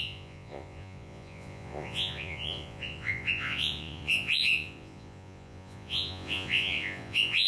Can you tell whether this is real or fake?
fake